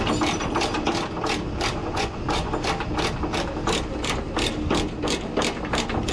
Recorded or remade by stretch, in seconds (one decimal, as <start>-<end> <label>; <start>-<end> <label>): 0.0-1.8 recorded; 1.8-2.5 remade; 2.5-6.1 recorded

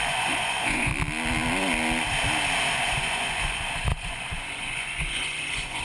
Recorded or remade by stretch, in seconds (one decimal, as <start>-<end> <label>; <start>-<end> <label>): 0.0-0.9 remade; 0.9-2.7 recorded; 2.7-5.8 remade

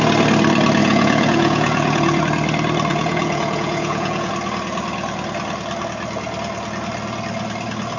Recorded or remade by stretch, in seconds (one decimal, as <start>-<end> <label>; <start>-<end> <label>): 0.0-0.8 recorded; 0.8-2.2 remade; 2.2-2.9 recorded; 2.9-4.3 remade; 4.3-8.0 recorded

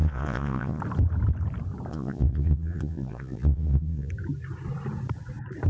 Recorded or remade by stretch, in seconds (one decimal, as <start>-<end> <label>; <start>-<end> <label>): 0.0-0.8 remade; 0.8-1.9 recorded; 1.9-4.1 remade; 4.1-5.7 recorded